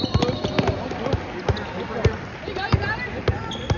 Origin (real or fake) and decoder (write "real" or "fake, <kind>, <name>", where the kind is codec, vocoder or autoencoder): real